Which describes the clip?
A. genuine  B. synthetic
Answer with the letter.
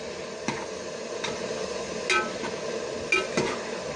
A